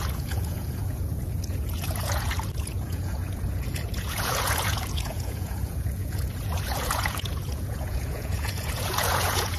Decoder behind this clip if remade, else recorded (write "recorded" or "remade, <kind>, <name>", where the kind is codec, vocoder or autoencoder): remade, vocoder, Vocos